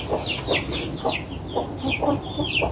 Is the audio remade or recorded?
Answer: recorded